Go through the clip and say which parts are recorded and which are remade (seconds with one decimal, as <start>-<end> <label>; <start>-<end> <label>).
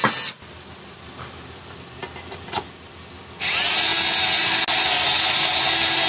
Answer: 0.0-6.1 recorded